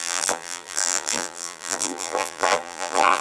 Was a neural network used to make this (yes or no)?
yes